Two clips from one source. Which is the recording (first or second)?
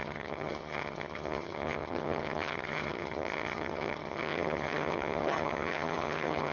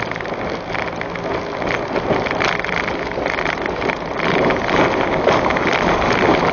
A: second